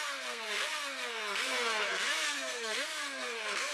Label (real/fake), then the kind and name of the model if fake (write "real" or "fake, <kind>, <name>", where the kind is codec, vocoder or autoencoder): fake, codec, SNAC